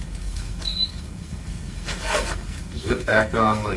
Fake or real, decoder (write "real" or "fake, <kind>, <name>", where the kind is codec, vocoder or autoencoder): fake, codec, SNAC